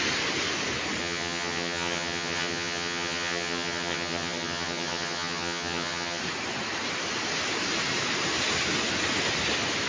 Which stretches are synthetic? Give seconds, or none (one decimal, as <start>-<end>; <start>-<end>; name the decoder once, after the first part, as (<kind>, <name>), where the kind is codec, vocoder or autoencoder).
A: 1.0-6.2 (vocoder, HiFi-GAN)